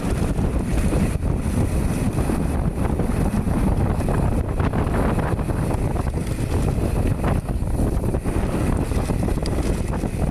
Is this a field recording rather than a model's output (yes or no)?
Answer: yes